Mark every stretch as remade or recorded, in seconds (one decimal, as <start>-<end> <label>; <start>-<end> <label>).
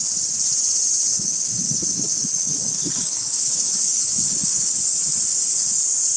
0.0-1.1 recorded; 1.1-4.8 remade; 4.8-5.3 recorded; 5.3-5.8 remade; 5.8-6.2 recorded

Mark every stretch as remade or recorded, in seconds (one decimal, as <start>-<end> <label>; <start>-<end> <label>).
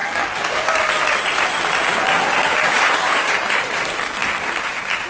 0.0-0.8 remade; 0.8-2.6 recorded; 2.6-3.6 remade; 3.6-5.1 recorded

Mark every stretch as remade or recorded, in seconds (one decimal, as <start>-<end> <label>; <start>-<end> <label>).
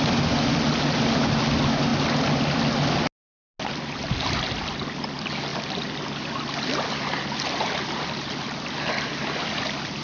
0.0-10.0 recorded